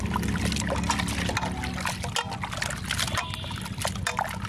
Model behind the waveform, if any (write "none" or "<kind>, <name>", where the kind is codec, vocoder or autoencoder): none